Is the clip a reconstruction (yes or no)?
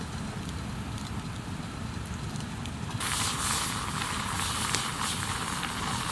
no